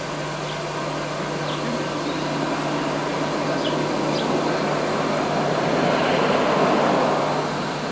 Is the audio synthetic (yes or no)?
no